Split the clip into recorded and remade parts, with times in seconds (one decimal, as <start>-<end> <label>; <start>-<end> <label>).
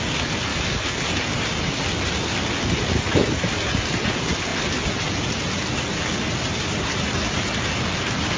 0.0-8.4 recorded